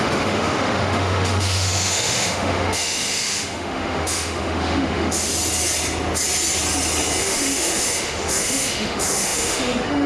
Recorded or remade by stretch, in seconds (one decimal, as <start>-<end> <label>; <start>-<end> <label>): 0.0-5.3 remade; 5.3-7.2 recorded; 7.2-10.1 remade